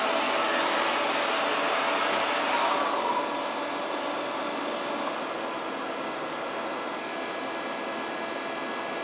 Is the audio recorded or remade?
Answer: recorded